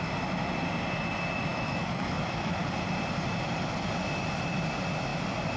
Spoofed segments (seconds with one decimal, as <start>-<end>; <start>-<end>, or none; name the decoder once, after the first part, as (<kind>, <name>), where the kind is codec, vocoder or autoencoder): 1.5-2.6 (autoencoder, DAC-VAE)